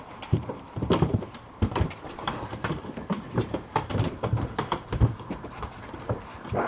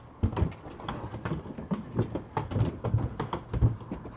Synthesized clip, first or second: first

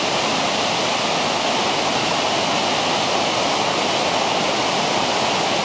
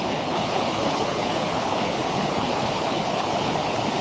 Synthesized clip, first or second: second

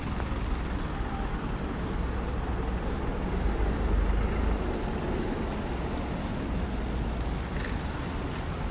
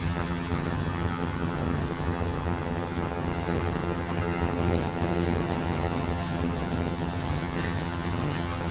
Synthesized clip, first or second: second